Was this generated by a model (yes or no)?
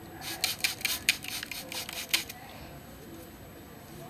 no